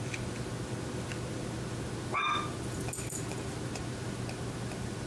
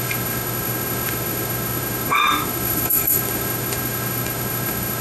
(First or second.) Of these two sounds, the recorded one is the first